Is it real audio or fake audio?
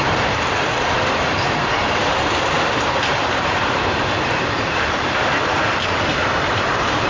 fake